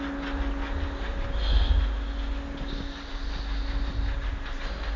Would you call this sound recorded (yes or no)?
yes